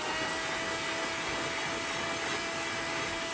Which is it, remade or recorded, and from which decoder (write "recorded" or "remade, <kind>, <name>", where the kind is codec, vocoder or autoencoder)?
recorded